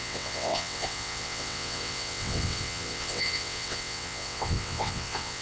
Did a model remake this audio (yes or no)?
yes